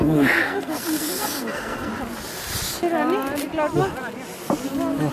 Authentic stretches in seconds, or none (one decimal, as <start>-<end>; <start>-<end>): 1.9-5.1